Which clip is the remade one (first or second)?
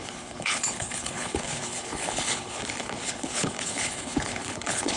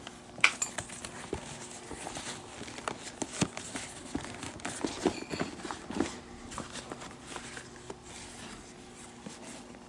first